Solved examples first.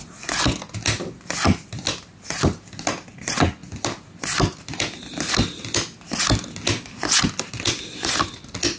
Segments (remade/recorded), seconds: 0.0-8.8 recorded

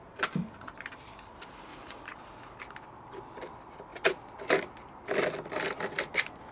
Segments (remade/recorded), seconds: 0.0-1.7 recorded; 1.7-2.2 remade; 2.2-6.5 recorded

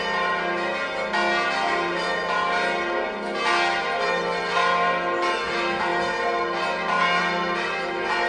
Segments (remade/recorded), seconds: 0.0-8.3 recorded

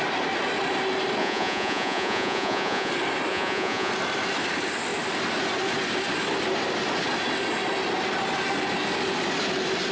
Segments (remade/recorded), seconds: 0.0-1.2 recorded; 1.2-2.9 remade; 2.9-3.3 recorded; 3.3-3.9 remade; 3.9-9.9 recorded